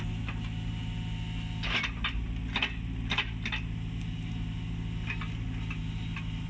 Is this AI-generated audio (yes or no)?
no